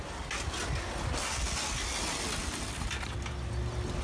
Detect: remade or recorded recorded